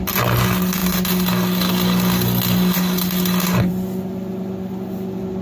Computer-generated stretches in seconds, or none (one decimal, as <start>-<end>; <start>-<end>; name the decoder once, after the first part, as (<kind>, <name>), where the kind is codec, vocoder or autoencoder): none